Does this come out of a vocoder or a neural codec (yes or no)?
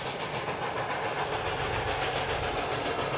no